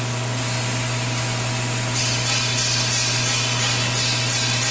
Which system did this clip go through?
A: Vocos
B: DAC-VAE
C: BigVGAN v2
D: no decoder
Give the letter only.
D